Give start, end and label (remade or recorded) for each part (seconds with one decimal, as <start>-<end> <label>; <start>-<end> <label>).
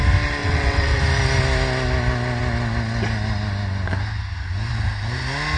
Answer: 0.0-0.4 recorded; 0.4-1.0 remade; 1.0-5.6 recorded